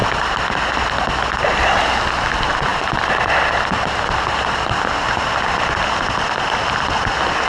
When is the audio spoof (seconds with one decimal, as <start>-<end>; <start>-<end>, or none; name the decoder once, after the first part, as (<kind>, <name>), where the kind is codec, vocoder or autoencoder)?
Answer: none